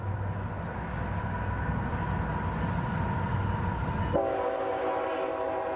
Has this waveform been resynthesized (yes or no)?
no